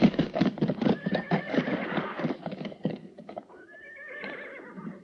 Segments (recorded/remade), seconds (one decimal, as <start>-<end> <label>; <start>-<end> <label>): 0.0-4.2 remade; 4.2-5.0 recorded